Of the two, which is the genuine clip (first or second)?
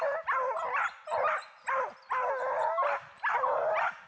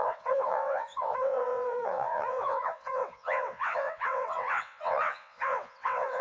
first